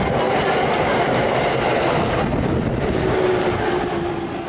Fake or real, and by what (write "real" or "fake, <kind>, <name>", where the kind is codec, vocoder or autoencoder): real